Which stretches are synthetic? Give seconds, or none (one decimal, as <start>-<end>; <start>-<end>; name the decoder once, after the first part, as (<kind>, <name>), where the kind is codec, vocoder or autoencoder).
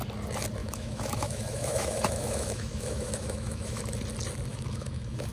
0.6-3.8 (autoencoder, DAC-VAE); 4.5-5.3